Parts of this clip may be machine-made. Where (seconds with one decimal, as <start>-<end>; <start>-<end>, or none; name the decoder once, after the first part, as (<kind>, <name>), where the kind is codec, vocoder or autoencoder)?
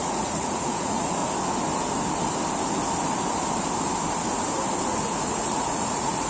0.0-1.2 (vocoder, Vocos); 5.0-6.3